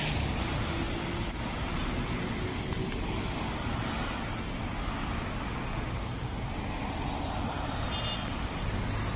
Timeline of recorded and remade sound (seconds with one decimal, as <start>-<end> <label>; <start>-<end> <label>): 0.0-9.2 recorded